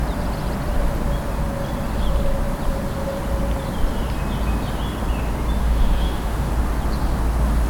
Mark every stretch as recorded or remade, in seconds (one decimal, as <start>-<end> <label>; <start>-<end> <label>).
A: 0.0-5.6 recorded; 5.6-6.5 remade; 6.5-7.7 recorded